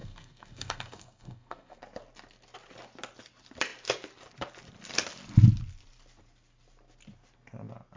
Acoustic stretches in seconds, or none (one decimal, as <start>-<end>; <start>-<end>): 1.8-8.0